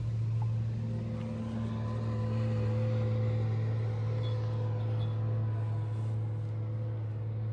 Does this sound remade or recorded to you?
recorded